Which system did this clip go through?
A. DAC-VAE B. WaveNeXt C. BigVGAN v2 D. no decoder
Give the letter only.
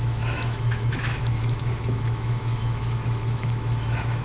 A